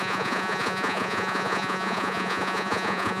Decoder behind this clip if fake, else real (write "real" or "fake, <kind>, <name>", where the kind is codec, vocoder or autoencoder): fake, vocoder, Vocos